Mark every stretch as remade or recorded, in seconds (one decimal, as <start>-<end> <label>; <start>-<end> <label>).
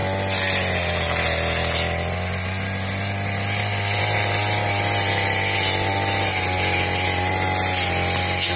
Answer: 0.0-8.6 recorded